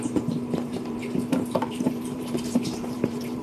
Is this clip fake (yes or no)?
yes